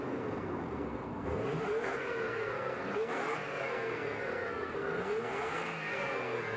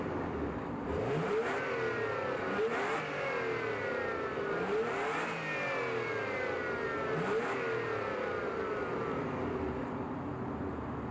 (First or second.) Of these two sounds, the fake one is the first